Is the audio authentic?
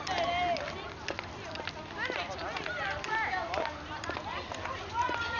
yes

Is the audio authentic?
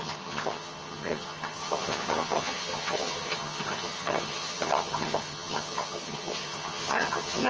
no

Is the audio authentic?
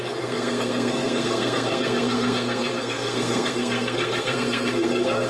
no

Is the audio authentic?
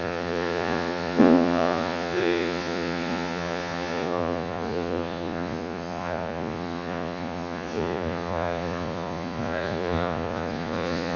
no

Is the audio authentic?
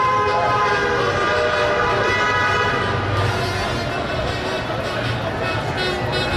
yes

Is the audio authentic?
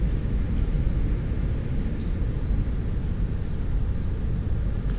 yes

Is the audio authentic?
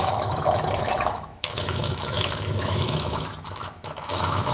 no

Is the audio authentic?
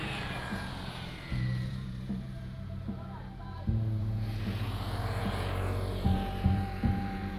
no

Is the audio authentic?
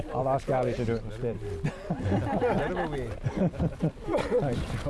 yes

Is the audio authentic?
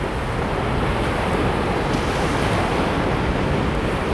yes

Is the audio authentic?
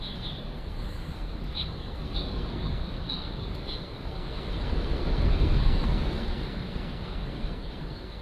no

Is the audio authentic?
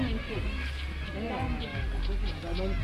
yes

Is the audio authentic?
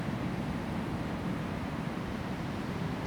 no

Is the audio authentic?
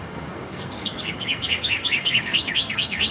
no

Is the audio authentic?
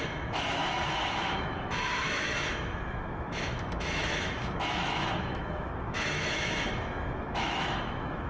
no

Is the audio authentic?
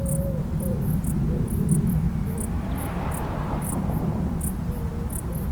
yes